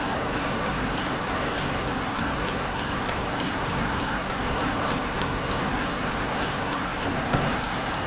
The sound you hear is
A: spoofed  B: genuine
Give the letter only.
A